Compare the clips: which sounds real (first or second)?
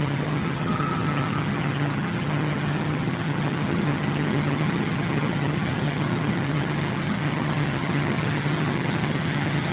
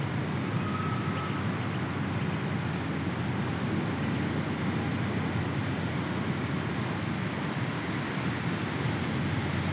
second